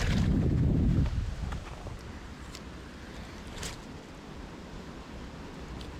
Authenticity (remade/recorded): recorded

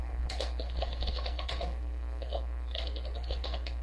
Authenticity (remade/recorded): remade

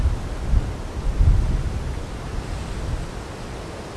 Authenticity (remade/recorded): recorded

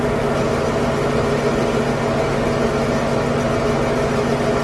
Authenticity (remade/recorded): recorded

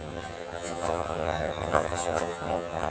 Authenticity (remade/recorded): remade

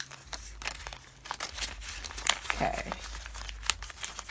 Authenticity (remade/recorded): recorded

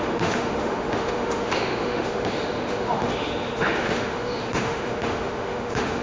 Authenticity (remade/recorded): remade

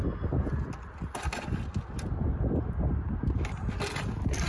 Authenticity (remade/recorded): recorded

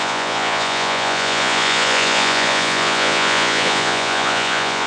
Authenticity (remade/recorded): remade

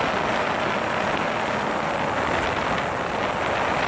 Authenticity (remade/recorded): recorded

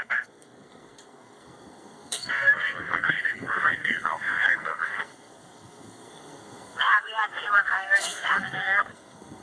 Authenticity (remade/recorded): remade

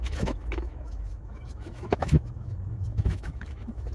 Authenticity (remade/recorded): remade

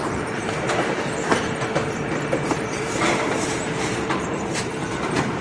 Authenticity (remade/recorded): remade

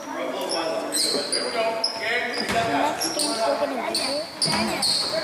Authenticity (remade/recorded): recorded